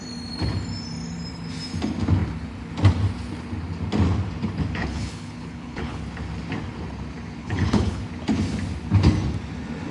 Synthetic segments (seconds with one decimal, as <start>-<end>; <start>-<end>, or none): 4.8-6.0; 7.4-8.0